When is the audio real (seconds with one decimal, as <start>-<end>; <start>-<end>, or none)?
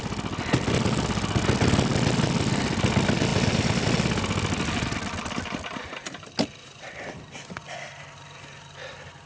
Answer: 0.0-9.3